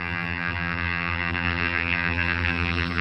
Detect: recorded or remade remade